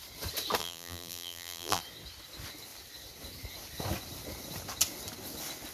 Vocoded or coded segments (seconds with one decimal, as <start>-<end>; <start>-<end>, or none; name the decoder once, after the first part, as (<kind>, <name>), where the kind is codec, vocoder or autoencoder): 0.6-1.8 (vocoder, BigVGAN v2)